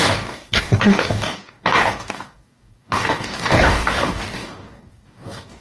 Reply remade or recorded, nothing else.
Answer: remade